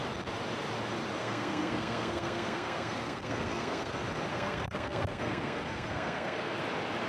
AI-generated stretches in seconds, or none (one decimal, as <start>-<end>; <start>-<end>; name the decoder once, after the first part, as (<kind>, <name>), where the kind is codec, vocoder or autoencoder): 1.2-3.9 (codec, SNAC); 4.3-6.6